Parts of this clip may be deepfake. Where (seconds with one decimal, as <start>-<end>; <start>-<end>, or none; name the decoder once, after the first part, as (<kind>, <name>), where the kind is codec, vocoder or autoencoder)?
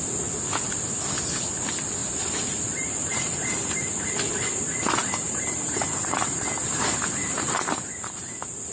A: 2.0-3.9 (vocoder, BigVGAN v2); 5.0-8.7